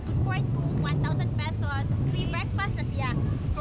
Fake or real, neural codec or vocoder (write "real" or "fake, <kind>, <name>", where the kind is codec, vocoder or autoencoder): real